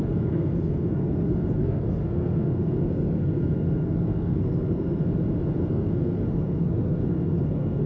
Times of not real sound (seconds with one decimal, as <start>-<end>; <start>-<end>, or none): 0.0-5.0; 5.7-7.9